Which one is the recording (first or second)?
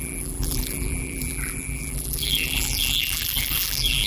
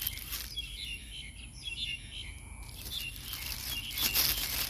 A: second